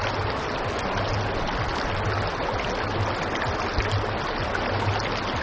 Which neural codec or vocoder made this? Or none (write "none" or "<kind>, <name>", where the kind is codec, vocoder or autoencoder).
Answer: none